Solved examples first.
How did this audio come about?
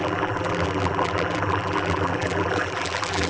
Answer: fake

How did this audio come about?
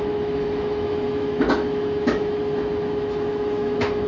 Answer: fake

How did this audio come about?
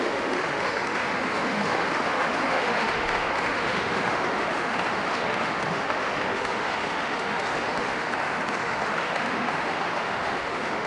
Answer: fake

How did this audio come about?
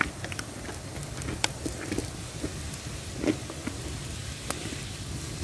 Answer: real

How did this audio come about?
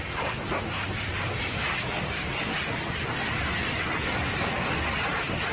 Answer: real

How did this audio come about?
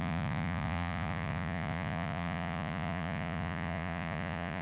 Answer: fake